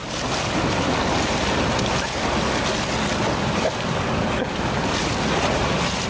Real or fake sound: real